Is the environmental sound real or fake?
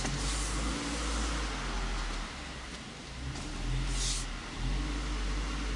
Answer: real